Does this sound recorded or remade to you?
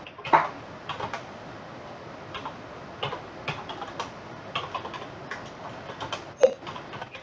recorded